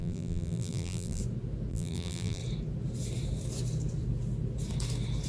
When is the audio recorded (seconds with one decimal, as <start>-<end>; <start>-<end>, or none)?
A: 1.2-1.7; 2.4-5.3